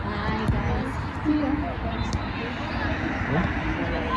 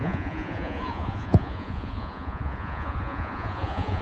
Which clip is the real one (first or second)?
first